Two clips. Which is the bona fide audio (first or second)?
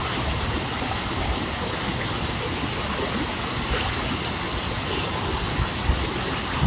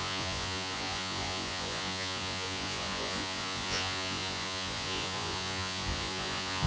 first